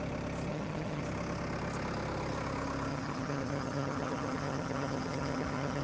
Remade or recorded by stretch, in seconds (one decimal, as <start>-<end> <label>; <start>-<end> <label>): 0.0-0.5 recorded; 0.5-1.0 remade; 1.0-2.9 recorded; 2.9-5.8 remade